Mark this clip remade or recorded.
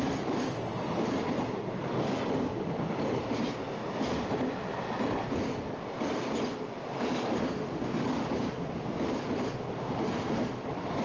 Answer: recorded